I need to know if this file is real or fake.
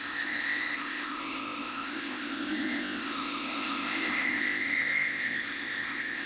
fake